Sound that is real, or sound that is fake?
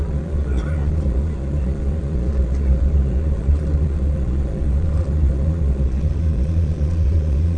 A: fake